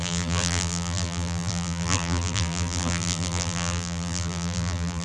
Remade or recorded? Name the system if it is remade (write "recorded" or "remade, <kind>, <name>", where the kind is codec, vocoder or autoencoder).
remade, vocoder, BigVGAN v2